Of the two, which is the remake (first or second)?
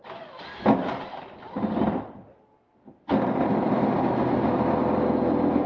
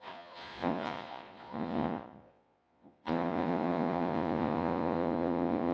second